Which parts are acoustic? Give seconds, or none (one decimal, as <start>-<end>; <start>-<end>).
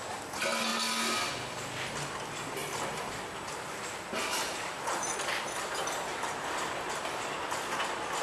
0.0-6.1; 7.2-8.2